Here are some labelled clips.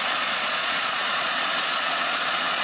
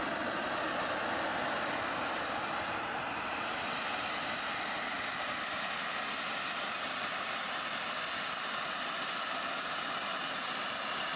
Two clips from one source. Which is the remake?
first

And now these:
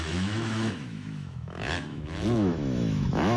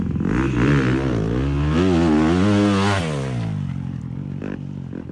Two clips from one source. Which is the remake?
first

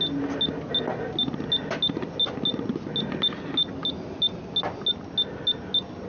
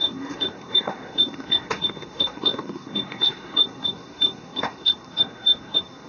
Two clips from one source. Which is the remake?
second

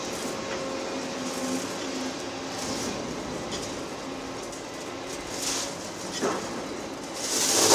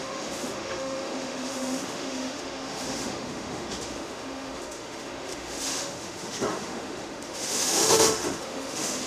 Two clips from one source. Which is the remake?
second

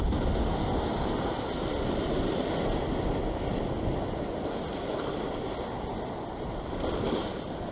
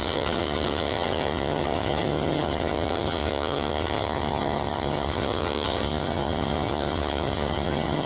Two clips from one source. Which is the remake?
second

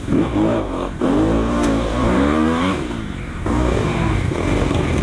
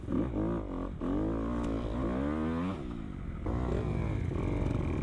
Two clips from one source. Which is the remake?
first